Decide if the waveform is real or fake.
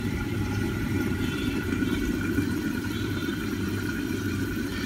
fake